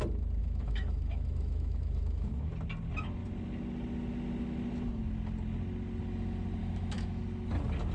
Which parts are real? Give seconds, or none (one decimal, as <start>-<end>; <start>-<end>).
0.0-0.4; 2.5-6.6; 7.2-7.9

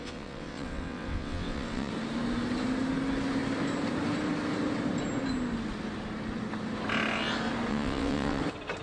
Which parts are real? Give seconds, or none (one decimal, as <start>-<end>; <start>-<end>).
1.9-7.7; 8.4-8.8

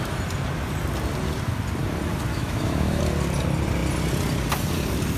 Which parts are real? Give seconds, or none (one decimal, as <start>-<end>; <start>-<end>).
0.0-2.3; 3.0-5.2

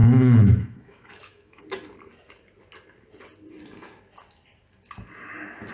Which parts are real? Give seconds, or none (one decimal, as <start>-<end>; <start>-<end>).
1.6-5.7

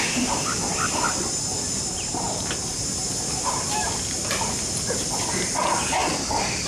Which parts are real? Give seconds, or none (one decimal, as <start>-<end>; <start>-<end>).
0.0-1.5; 5.5-6.0

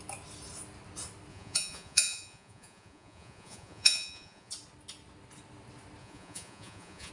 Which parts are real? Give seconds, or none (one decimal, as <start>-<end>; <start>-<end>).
0.0-1.3; 4.5-6.0

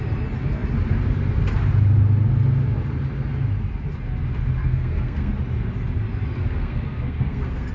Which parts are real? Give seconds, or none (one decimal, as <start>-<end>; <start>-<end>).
0.0-4.6; 5.3-6.4

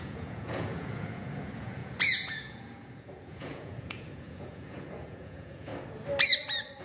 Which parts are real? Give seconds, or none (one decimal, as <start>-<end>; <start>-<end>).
5.7-6.8